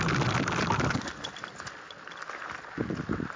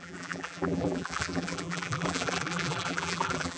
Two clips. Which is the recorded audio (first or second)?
first